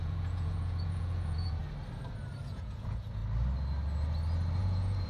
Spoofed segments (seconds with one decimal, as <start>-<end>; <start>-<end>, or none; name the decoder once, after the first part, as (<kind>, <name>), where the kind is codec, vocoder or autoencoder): 0.0-1.6 (vocoder, Vocos); 2.4-3.2; 4.6-5.1